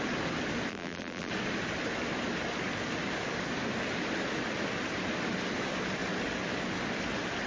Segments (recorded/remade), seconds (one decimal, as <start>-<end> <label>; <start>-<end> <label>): 0.0-0.7 recorded; 0.7-1.3 remade; 1.3-7.5 recorded

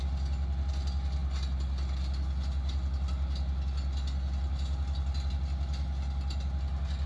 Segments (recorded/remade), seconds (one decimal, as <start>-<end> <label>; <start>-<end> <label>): 0.0-7.1 recorded

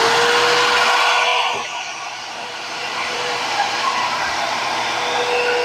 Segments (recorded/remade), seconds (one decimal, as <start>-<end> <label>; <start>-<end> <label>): 0.0-1.3 recorded; 1.3-4.7 remade; 4.7-5.6 recorded

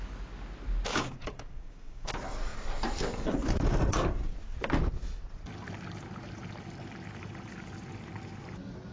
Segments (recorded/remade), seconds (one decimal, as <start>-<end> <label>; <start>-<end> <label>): 0.0-0.9 recorded; 0.9-2.1 remade; 2.1-8.9 recorded

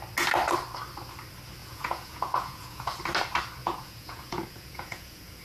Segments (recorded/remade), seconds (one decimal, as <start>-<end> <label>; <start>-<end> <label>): 0.0-1.6 recorded; 1.6-3.0 remade; 3.0-3.6 recorded; 3.6-5.4 remade

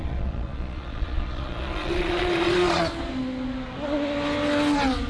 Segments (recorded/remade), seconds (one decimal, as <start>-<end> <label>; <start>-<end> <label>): 0.0-2.8 remade; 2.8-5.1 recorded

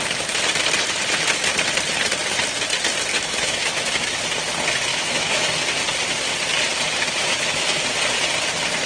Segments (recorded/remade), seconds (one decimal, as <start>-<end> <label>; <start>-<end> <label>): 0.0-3.1 recorded; 3.1-4.2 remade; 4.2-4.9 recorded; 4.9-5.5 remade; 5.5-7.2 recorded; 7.2-7.8 remade; 7.8-8.9 recorded

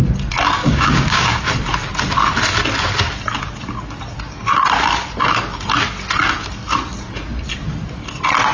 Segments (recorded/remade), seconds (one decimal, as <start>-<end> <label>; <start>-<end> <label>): 0.0-0.6 recorded; 0.6-1.4 remade; 1.4-8.5 recorded